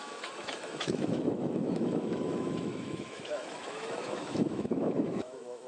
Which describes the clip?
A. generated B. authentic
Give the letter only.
A